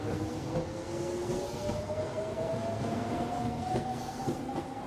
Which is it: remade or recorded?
remade